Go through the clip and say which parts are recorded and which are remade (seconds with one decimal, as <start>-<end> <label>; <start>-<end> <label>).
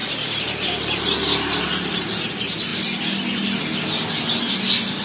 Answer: 0.0-2.2 remade; 2.2-2.7 recorded; 2.7-3.6 remade; 3.6-5.0 recorded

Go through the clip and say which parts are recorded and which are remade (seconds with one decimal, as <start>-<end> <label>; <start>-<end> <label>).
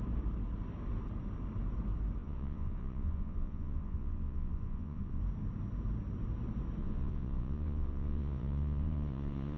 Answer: 0.0-2.2 recorded; 2.2-5.2 remade; 5.2-6.8 recorded; 6.8-9.6 remade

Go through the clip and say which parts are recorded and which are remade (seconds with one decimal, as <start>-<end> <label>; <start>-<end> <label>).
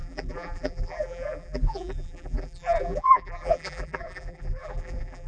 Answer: 0.0-5.3 remade